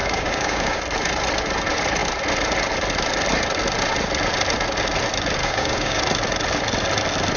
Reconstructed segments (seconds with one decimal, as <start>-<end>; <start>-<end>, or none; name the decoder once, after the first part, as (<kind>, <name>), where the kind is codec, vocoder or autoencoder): 0.0-0.8 (codec, DAC); 5.4-6.0

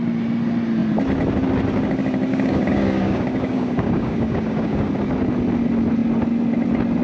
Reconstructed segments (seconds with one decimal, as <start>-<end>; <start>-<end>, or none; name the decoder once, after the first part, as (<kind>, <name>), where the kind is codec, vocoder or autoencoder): 2.3-4.9 (codec, DAC)

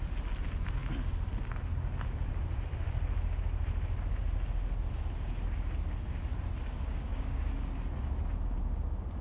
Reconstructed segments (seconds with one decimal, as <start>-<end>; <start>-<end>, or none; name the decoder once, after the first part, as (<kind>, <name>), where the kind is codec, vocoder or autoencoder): 6.9-7.5 (codec, DAC)

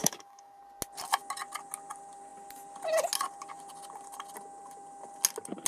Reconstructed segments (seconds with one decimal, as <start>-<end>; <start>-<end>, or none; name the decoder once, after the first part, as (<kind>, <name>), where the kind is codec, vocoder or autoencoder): 0.0-0.6 (codec, DAC)

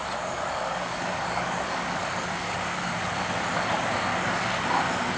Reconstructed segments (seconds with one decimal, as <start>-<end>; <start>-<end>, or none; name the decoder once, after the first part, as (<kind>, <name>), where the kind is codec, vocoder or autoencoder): 0.0-3.1 (codec, DAC); 4.1-4.6

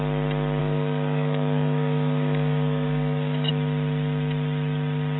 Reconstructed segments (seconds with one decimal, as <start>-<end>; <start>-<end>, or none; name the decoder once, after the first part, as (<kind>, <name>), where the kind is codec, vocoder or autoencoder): 0.6-3.5 (codec, DAC)

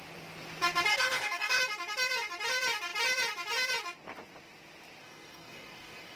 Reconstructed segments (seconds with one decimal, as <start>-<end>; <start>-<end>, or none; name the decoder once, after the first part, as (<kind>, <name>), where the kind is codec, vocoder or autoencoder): 0.9-1.6 (codec, DAC); 5.0-6.2

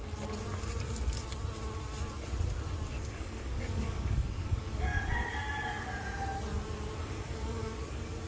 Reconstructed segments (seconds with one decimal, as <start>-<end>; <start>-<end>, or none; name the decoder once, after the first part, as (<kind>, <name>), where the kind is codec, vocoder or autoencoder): 2.9-4.9 (codec, DAC); 7.0-8.3